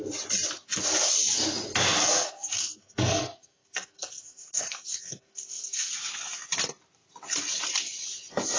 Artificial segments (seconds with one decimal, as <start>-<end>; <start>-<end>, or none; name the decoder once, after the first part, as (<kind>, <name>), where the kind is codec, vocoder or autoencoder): 2.0-5.9 (codec, SNAC)